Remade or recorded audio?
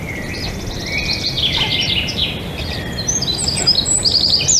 recorded